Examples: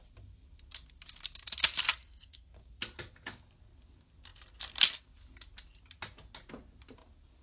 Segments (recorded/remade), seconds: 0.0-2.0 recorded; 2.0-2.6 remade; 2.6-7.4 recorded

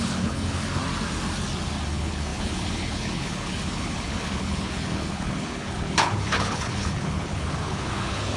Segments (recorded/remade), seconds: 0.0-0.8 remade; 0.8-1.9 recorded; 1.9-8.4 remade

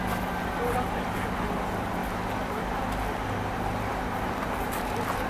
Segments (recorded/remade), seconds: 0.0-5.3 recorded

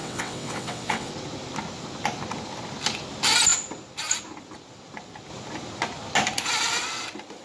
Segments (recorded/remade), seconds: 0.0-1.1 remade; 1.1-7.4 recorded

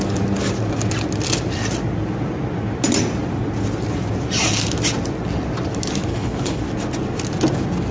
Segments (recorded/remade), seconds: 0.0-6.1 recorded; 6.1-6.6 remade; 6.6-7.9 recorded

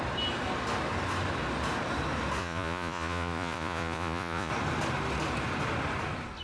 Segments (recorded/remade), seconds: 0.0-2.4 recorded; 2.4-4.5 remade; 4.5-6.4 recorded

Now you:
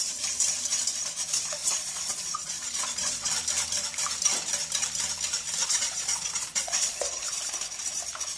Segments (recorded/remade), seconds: 0.0-1.6 recorded; 1.6-3.3 remade; 3.3-5.6 recorded; 5.6-7.2 remade; 7.2-8.4 recorded

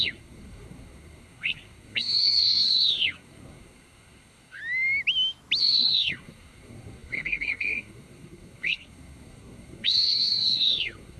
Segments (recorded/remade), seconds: 0.0-4.6 remade; 4.6-5.6 recorded; 5.6-11.2 remade